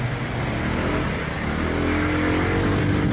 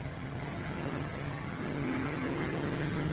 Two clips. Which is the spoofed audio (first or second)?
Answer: second